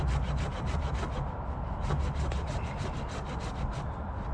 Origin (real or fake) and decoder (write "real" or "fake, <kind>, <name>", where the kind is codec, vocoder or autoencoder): real